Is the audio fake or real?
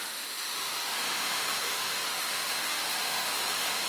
fake